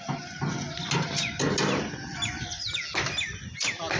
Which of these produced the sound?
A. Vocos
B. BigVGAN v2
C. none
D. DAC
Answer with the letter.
C